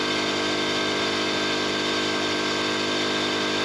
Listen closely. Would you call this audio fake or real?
real